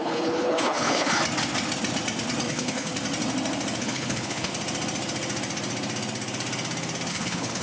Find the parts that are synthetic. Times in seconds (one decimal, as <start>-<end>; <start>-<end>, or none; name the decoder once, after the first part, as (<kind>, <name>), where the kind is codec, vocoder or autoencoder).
0.0-1.2 (codec, HILCodec); 2.5-2.9; 3.8-4.5; 7.1-7.6